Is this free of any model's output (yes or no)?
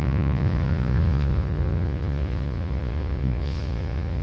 no